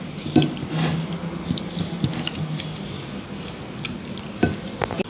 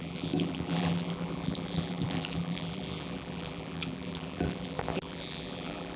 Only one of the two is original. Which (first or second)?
first